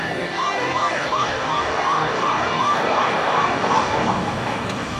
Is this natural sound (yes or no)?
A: no